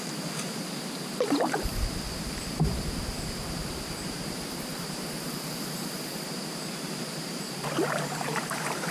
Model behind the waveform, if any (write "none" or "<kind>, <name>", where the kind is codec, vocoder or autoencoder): vocoder, BigVGAN v2